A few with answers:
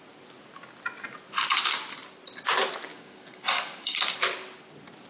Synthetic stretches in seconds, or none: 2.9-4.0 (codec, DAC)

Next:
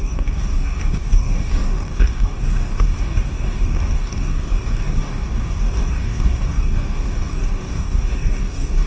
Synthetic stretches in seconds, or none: 0.0-8.9 (codec, DAC)

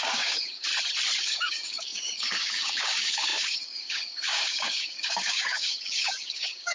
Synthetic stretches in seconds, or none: 0.0-0.7 (codec, DAC); 1.2-6.7